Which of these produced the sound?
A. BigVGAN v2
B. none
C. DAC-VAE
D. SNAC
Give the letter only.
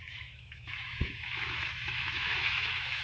C